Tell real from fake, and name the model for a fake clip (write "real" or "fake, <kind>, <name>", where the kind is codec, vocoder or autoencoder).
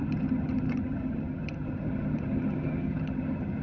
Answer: fake, vocoder, HiFi-GAN